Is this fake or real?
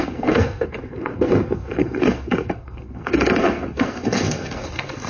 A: fake